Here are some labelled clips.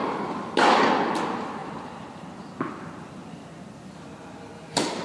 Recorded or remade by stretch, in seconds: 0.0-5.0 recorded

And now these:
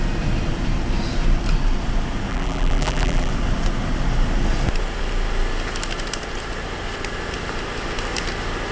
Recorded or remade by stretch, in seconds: 0.0-2.3 recorded; 2.3-3.3 remade; 3.3-8.7 recorded

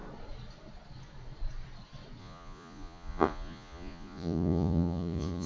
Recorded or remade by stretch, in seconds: 0.0-2.2 recorded; 2.2-5.5 remade